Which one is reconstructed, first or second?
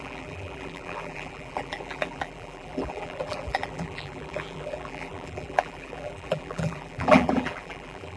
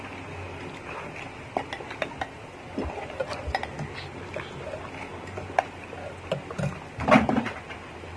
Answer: first